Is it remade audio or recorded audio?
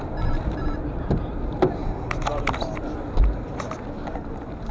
recorded